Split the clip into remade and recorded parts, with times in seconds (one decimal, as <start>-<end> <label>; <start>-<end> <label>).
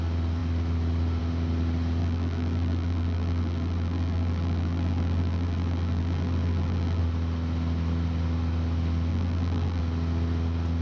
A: 0.0-2.0 recorded; 2.0-7.0 remade; 7.0-9.1 recorded; 9.1-9.8 remade; 9.8-10.8 recorded